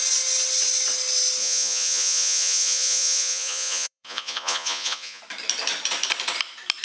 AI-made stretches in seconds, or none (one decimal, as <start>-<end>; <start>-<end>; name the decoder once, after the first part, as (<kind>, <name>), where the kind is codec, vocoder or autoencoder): 1.4-5.2 (vocoder, Vocos)